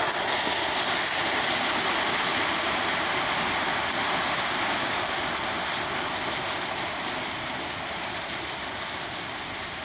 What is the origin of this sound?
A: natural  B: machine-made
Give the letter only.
A